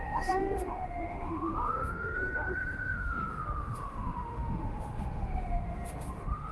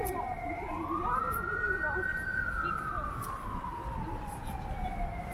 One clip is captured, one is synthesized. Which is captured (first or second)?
second